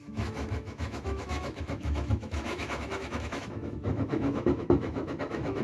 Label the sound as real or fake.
fake